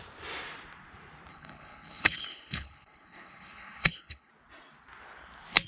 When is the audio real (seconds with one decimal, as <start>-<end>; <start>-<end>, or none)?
0.0-1.3; 4.3-5.7